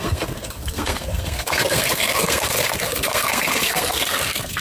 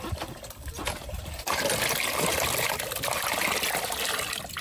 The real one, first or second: second